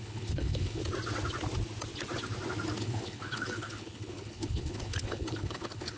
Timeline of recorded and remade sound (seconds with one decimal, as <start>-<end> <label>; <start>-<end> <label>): 0.0-0.8 remade; 0.8-2.8 recorded; 2.8-6.0 remade